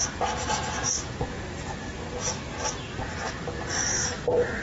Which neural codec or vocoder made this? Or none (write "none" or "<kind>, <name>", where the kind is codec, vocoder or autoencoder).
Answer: none